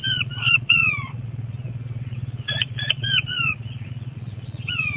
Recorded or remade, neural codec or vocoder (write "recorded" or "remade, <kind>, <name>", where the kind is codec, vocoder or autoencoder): remade, vocoder, Vocos